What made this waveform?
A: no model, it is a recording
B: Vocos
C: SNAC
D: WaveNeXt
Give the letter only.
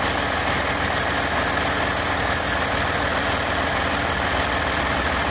A